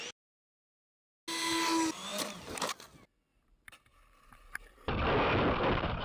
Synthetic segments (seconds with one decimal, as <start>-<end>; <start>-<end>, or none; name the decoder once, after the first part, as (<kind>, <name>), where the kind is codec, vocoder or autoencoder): 2.1-2.7 (vocoder, BigVGAN v2); 3.3-4.9